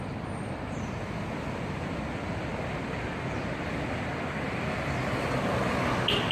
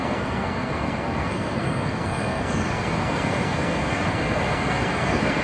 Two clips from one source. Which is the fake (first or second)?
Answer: second